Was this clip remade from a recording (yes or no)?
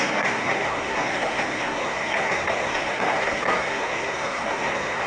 yes